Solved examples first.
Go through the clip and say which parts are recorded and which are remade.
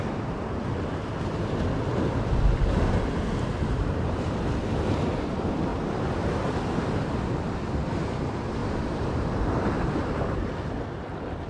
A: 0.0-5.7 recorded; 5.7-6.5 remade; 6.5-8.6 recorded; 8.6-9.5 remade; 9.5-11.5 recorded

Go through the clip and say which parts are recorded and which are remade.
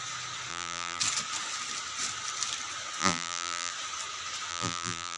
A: 0.0-0.5 recorded; 0.5-1.0 remade; 1.0-3.0 recorded; 3.0-3.7 remade; 3.7-4.5 recorded; 4.5-5.2 remade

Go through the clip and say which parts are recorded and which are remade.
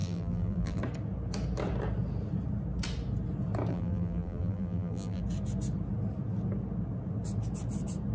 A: 0.0-0.8 remade; 0.8-3.7 recorded; 3.7-5.2 remade; 5.2-8.1 recorded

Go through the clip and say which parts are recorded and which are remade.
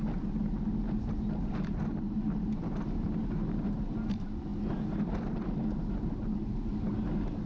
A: 0.0-7.5 recorded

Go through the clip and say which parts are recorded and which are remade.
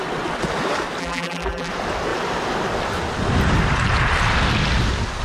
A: 0.0-1.0 recorded; 1.0-1.7 remade; 1.7-5.2 recorded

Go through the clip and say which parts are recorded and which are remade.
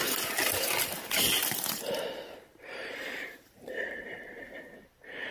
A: 0.0-1.4 recorded; 1.4-4.6 remade; 4.6-5.3 recorded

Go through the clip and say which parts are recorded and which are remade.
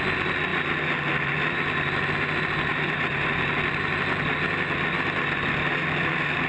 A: 0.0-2.7 recorded; 2.7-3.5 remade; 3.5-6.5 recorded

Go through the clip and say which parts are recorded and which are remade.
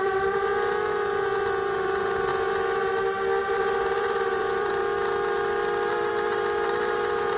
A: 0.0-0.5 remade; 0.5-1.2 recorded; 1.2-2.3 remade; 2.3-3.4 recorded; 3.4-4.8 remade; 4.8-5.9 recorded; 5.9-7.4 remade